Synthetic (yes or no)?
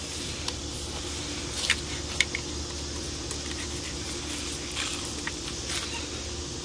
no